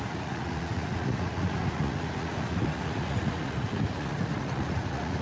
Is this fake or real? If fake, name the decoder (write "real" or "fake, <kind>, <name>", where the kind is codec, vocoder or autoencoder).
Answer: fake, vocoder, Vocos